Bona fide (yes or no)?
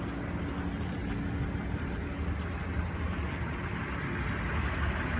yes